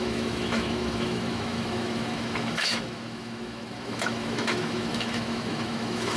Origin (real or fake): fake